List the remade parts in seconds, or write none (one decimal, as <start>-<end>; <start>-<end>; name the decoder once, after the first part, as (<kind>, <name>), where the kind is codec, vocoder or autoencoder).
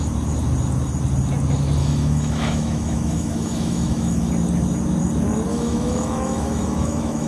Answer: 1.8-4.3 (autoencoder, DAC-VAE); 5.5-7.3